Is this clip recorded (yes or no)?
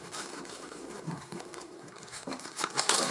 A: no